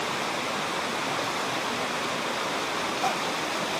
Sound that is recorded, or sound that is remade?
recorded